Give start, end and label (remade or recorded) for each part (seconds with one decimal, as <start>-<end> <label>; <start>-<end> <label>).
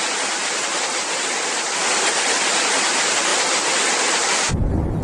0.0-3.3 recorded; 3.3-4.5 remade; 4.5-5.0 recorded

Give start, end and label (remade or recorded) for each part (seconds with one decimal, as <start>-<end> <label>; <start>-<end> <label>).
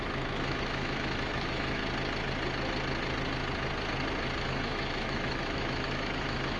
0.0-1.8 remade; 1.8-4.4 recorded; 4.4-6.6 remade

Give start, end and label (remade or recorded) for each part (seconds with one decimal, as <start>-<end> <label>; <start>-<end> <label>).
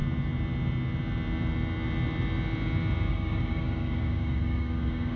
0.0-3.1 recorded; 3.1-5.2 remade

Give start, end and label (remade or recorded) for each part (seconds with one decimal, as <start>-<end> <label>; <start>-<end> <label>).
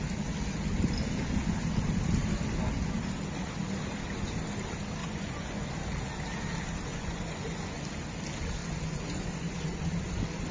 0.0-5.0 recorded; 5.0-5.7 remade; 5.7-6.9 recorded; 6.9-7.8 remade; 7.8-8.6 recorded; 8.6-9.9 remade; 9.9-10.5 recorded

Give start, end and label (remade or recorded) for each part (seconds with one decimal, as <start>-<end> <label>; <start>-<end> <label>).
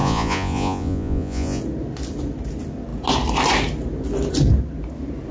0.0-1.6 remade; 1.6-5.3 recorded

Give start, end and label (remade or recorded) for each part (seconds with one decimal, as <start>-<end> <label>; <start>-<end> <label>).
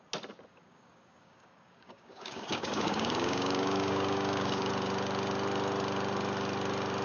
0.0-0.5 recorded; 0.5-4.7 remade; 4.7-7.0 recorded